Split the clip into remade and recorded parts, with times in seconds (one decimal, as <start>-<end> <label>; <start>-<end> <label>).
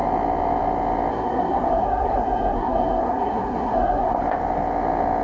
0.0-1.1 recorded; 1.1-4.2 remade; 4.2-5.2 recorded